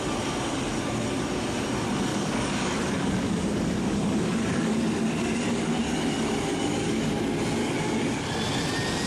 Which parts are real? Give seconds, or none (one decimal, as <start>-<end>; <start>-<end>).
0.0-2.1; 7.1-7.6; 8.2-9.1